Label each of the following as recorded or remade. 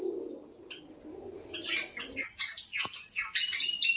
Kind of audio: recorded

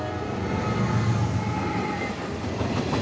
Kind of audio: recorded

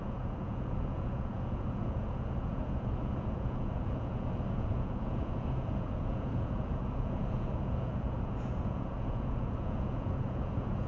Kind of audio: remade